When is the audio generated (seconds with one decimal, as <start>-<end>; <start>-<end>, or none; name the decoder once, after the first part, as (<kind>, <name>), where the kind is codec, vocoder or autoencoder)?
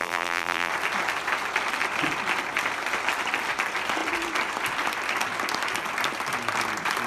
0.0-0.7 (vocoder, BigVGAN v2)